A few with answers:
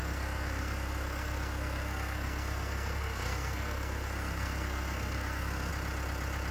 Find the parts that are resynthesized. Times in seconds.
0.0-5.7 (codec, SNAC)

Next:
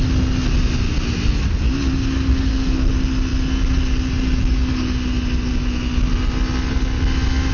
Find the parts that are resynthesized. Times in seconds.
2.3-2.9 (codec, SNAC)

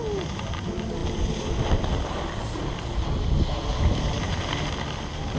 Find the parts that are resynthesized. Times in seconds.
none

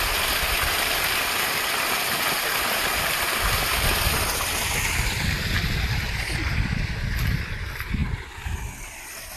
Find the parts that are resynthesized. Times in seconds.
none

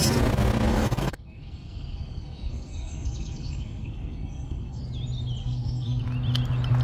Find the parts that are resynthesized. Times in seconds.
0.7-4.8 (codec, SNAC); 5.4-6.0

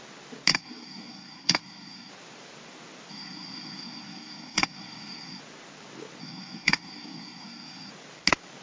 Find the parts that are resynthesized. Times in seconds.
0.5-2.1 (codec, SNAC); 3.1-5.4; 6.2-7.9

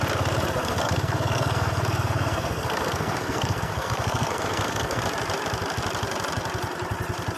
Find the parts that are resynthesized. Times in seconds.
0.6-5.0 (codec, SNAC)

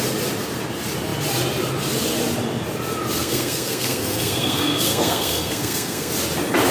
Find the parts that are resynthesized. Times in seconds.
3.2-6.1 (codec, SNAC)